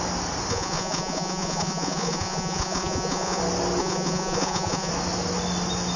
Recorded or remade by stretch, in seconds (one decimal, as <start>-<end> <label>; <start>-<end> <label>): 0.0-0.5 recorded; 0.5-3.4 remade; 3.4-3.8 recorded; 3.8-4.9 remade; 4.9-6.0 recorded